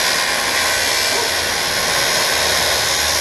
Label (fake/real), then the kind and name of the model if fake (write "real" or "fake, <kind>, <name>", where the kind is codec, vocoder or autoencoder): real